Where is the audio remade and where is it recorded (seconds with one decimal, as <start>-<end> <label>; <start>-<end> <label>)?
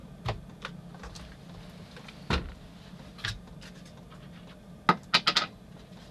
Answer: 0.0-6.1 recorded